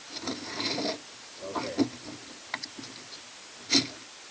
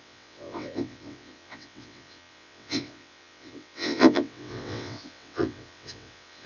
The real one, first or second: first